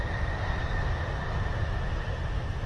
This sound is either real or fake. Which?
real